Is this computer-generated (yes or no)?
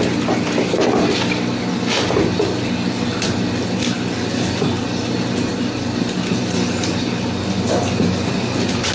no